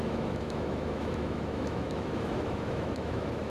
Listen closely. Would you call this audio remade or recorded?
remade